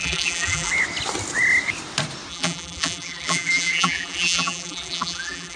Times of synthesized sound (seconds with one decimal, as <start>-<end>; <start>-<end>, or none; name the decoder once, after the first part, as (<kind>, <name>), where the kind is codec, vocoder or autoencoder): 0.0-0.7 (vocoder, BigVGAN v2); 2.3-5.6